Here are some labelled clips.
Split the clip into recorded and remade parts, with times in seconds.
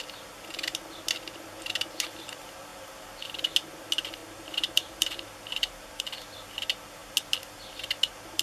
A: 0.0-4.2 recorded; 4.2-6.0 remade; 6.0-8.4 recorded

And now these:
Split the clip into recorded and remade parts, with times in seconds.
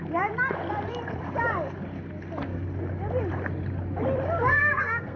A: 0.0-4.5 recorded; 4.5-5.2 remade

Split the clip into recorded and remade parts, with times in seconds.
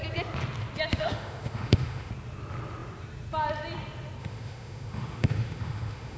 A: 0.0-0.9 recorded; 0.9-2.1 remade; 2.1-4.2 recorded; 4.2-6.2 remade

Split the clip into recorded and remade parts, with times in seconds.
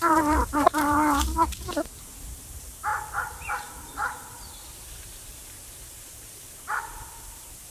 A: 0.0-2.9 remade; 2.9-3.5 recorded; 3.5-7.7 remade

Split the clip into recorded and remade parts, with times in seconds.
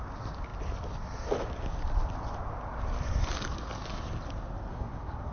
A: 0.0-4.7 recorded; 4.7-5.3 remade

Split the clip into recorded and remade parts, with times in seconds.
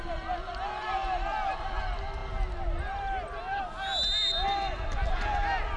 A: 0.0-5.8 recorded